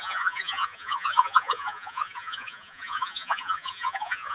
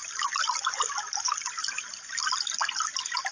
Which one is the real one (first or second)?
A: second